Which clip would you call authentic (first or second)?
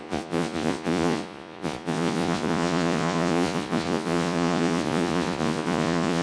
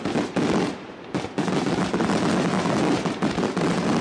second